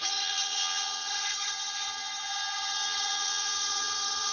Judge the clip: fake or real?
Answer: fake